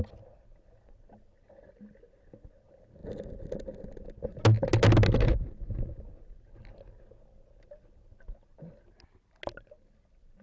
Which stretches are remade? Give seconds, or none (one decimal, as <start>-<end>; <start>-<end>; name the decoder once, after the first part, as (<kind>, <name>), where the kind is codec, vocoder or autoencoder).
none